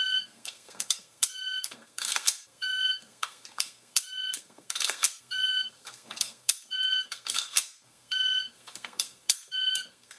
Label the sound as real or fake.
fake